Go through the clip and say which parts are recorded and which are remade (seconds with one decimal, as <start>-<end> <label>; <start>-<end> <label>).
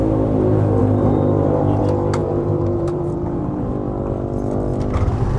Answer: 0.0-0.8 recorded; 0.8-1.8 remade; 1.8-2.2 recorded; 2.2-3.7 remade; 3.7-5.4 recorded